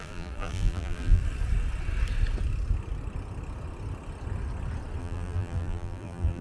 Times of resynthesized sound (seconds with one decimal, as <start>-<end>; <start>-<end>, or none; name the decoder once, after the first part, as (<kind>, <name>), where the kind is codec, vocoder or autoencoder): 0.0-1.2 (vocoder, BigVGAN v2); 5.0-6.4